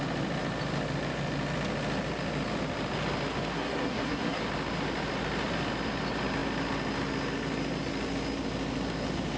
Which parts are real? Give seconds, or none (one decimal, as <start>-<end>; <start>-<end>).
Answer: 0.0-3.5; 4.4-9.4